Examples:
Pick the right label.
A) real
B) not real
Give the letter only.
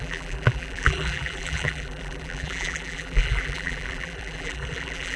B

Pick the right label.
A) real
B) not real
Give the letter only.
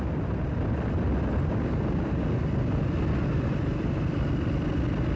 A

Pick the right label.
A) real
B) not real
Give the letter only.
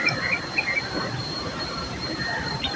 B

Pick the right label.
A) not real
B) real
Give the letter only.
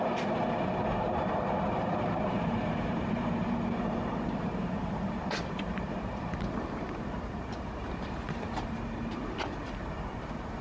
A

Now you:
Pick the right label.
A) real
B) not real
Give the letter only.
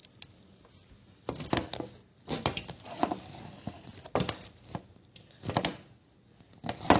B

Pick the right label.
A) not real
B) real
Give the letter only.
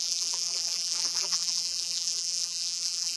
A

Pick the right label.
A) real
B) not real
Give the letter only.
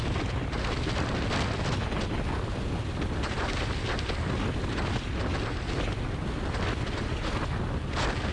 A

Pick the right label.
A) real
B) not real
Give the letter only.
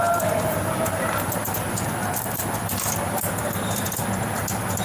A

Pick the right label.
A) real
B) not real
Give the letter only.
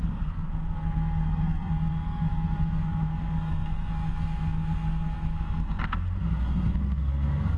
B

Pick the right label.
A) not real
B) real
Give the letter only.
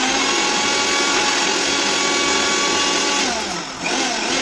B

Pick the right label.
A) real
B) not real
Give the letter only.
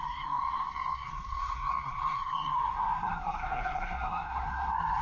B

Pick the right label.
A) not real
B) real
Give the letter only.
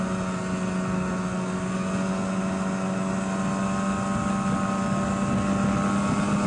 B